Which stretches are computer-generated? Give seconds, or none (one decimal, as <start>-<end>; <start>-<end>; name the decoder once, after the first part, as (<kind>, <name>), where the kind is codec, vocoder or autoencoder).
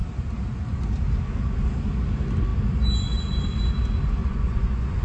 4.2-5.0 (vocoder, Vocos)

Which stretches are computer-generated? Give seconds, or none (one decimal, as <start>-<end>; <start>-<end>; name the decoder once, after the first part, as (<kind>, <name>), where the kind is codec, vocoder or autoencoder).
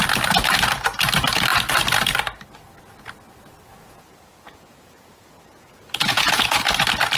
3.7-6.7 (vocoder, Vocos)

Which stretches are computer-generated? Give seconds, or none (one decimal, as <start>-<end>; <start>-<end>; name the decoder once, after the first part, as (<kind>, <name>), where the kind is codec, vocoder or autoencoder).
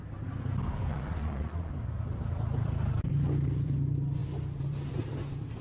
0.9-1.7 (vocoder, Vocos)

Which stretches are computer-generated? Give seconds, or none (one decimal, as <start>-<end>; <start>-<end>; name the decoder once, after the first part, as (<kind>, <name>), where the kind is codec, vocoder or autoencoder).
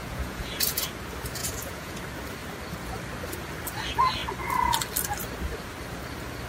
0.0-0.9 (vocoder, Vocos); 1.4-2.0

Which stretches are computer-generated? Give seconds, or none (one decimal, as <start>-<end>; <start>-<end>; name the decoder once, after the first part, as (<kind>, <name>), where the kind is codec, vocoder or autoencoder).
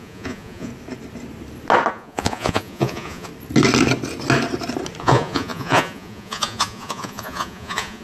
0.0-0.7 (vocoder, Vocos); 1.9-3.3; 5.0-8.0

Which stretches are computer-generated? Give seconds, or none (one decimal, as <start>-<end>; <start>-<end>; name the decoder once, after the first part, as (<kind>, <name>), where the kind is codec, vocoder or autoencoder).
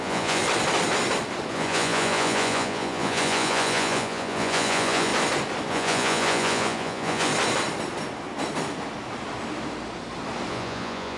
0.0-0.4 (vocoder, Vocos); 1.5-5.1; 5.7-7.3; 10.5-11.2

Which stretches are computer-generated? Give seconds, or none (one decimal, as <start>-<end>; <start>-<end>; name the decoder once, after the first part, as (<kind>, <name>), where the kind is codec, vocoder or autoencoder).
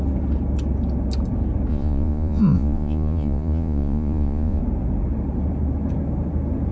1.7-4.6 (vocoder, Vocos)